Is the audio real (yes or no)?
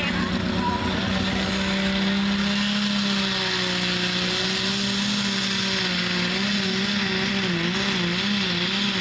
yes